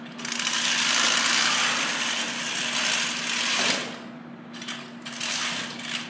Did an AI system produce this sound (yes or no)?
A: no